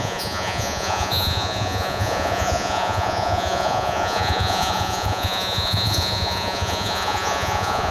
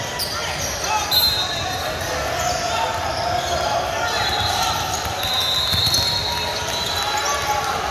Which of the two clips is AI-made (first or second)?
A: first